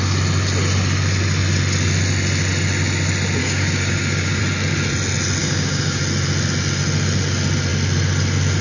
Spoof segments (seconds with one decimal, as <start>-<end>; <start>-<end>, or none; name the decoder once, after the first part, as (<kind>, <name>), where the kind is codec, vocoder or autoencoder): 3.4-4.4 (codec, DAC); 5.4-6.0

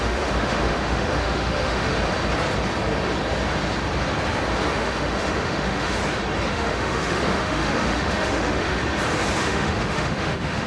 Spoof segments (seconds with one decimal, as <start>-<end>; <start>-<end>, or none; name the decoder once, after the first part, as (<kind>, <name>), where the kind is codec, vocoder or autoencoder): 0.0-1.9 (autoencoder, DAC-VAE); 4.7-6.0; 6.5-8.8; 9.4-10.7

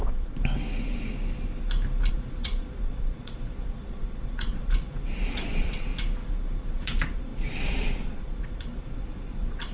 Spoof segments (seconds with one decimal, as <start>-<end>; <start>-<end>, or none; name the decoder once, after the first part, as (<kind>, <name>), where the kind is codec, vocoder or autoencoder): 0.0-0.5 (vocoder, Vocos); 2.1-5.9; 6.6-9.7

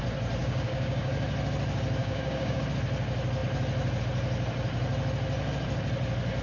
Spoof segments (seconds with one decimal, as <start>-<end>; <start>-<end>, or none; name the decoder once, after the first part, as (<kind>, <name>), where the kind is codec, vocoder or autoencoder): 0.4-1.1 (codec, DAC); 2.0-2.6